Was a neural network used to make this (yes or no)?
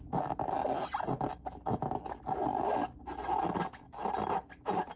no